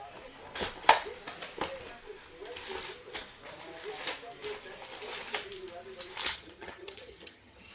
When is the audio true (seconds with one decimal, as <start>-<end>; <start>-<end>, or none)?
0.0-6.3